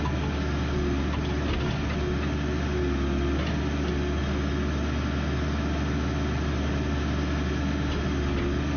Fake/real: real